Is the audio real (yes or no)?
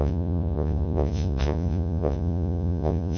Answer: no